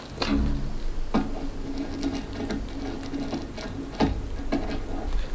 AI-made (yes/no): no